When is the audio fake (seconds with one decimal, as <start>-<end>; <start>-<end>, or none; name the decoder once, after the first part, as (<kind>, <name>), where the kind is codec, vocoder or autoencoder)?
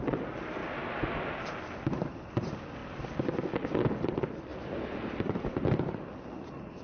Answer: none